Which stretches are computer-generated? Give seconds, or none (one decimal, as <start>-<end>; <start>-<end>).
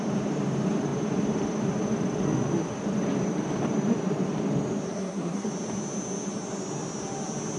4.9-5.5